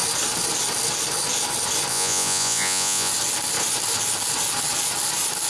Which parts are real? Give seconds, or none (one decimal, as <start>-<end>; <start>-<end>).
0.0-1.9; 3.1-5.5

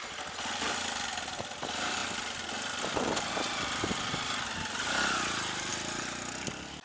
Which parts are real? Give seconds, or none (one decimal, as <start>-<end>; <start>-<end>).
0.0-6.8